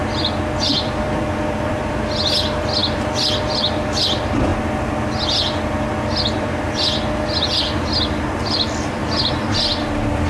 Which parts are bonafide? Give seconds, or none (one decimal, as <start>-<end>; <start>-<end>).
0.0-0.6; 4.5-6.0